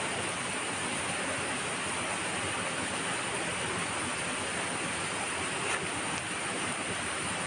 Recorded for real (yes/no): yes